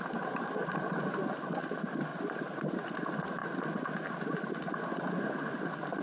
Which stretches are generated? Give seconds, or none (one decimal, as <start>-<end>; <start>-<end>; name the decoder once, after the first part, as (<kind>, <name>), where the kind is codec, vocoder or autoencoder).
0.0-6.0 (vocoder, BigVGAN v2)